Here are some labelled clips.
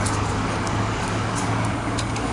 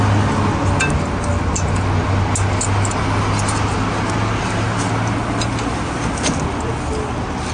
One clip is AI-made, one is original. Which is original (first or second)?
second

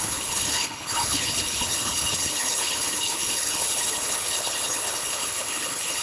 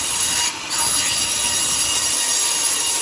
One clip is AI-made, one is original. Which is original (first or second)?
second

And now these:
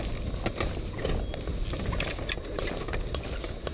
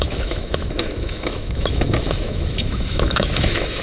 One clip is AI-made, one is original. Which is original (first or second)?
first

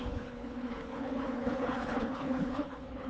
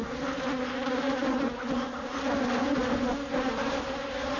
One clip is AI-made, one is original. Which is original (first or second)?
second